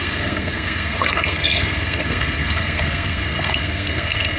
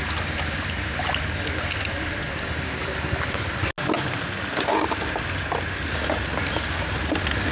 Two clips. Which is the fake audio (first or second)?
first